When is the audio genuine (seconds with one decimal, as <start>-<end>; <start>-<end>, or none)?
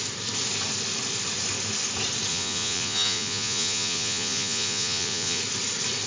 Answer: 0.0-2.3; 5.4-6.1